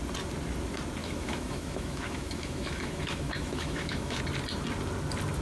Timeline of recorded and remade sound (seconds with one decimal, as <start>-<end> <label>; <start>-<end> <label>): 0.0-1.0 recorded; 1.0-4.2 remade; 4.2-5.4 recorded